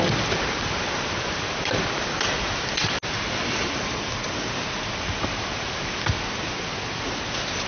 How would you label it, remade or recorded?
recorded